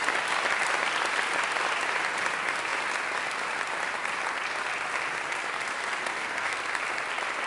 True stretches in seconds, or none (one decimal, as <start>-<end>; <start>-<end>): 0.0-6.0; 6.6-7.5